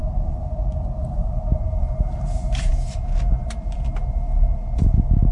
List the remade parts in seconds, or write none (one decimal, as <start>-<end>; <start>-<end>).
0.0-2.7

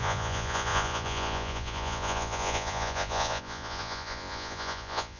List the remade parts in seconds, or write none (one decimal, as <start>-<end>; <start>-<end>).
0.0-5.2

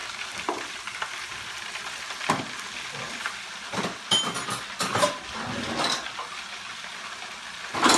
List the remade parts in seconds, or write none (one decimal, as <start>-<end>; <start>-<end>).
none

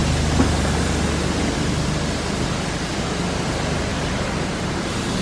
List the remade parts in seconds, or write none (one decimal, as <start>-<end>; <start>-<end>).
3.9-4.7

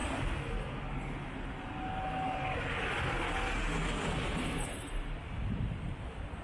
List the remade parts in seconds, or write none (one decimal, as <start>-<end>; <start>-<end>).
none

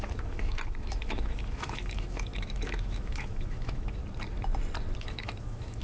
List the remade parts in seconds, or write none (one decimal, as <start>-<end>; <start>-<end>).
0.0-4.0; 5.0-5.8